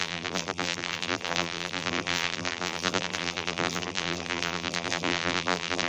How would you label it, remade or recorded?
remade